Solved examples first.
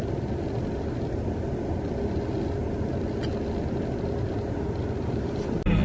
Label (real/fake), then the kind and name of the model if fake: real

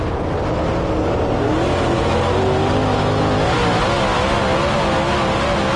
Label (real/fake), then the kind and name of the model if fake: real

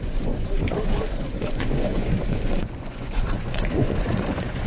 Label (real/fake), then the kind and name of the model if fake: fake, vocoder, Vocos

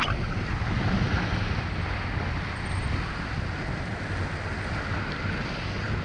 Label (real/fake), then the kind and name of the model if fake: real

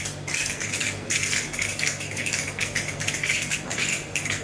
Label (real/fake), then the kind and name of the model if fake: fake, codec, SNAC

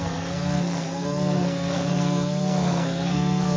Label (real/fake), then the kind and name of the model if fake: fake, codec, SNAC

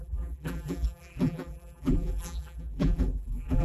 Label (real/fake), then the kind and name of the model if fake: fake, vocoder, BigVGAN v2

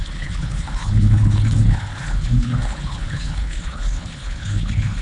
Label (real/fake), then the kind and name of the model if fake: fake, codec, HILCodec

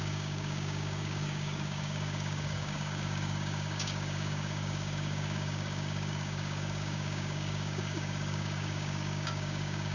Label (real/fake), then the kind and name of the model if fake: fake, codec, DAC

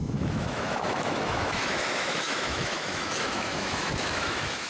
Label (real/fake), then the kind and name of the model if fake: fake, autoencoder, DAC-VAE